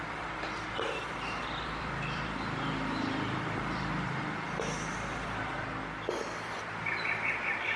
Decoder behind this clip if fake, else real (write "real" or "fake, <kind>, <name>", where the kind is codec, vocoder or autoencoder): fake, vocoder, BigVGAN v2